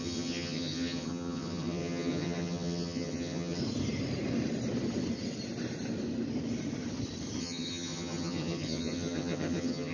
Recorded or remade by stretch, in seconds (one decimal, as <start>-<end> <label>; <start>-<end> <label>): 0.0-3.6 remade; 3.6-7.4 recorded; 7.4-9.9 remade